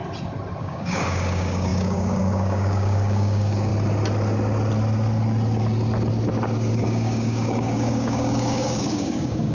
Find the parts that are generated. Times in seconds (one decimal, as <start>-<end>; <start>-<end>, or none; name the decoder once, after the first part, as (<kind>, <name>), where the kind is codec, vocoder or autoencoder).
0.6-3.7 (codec, DAC); 6.7-9.5

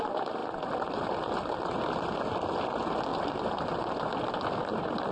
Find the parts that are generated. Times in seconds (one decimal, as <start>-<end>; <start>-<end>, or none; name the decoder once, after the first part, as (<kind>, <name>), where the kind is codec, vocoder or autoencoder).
none

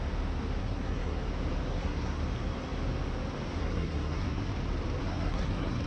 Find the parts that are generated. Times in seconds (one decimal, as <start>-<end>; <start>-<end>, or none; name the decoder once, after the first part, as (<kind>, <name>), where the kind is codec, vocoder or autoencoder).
0.6-1.2 (codec, SNAC); 1.7-2.2; 3.6-4.5; 5.0-5.9

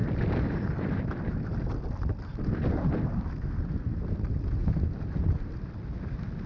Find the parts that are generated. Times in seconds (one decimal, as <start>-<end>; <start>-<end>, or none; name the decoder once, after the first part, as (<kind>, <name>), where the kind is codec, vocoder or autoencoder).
0.0-3.1 (vocoder, BigVGAN v2); 4.6-5.5